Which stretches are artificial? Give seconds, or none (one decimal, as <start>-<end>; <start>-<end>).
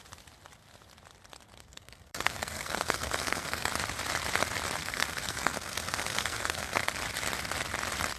1.6-3.7; 4.8-6.9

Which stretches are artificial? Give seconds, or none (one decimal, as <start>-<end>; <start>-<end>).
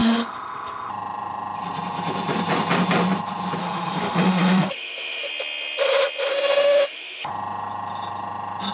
0.0-0.9; 3.6-5.3; 6.3-7.3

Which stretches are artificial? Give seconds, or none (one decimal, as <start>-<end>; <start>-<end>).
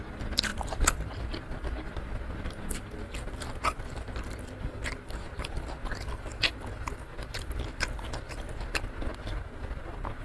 0.5-1.2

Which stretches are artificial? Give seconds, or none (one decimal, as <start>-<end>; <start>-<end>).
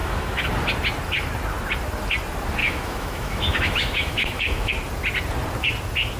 0.0-0.5; 2.6-4.7